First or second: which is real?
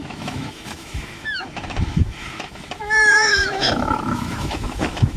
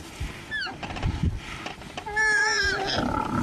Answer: second